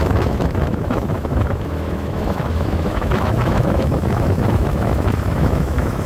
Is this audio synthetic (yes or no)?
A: yes